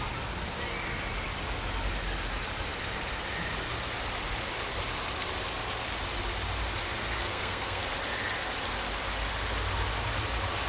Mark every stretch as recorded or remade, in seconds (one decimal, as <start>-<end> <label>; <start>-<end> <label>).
0.0-7.3 recorded; 7.3-7.8 remade; 7.8-10.7 recorded